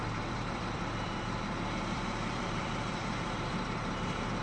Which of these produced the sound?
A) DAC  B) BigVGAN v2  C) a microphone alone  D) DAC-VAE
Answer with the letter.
B